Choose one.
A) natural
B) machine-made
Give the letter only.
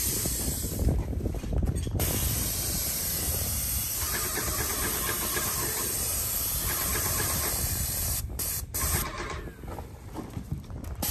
B